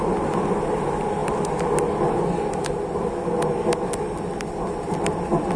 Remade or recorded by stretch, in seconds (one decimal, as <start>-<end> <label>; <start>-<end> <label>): 0.0-5.6 recorded